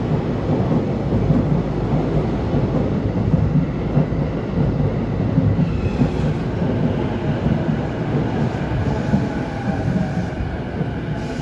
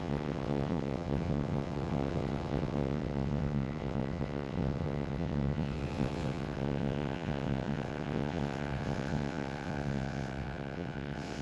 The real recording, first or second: first